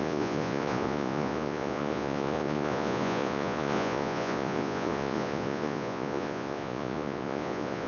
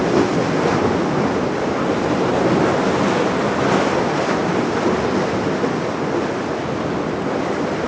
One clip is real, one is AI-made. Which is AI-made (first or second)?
first